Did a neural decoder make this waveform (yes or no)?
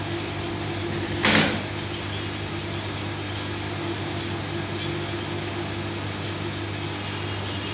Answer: no